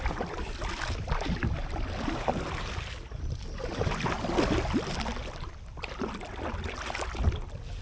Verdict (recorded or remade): recorded